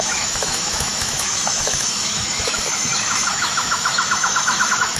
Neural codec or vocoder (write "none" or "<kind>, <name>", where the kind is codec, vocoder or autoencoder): autoencoder, DAC-VAE